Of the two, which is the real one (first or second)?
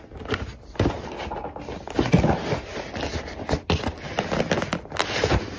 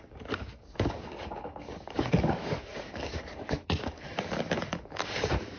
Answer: first